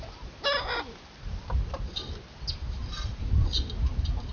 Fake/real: real